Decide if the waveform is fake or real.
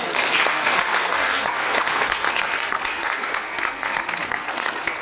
fake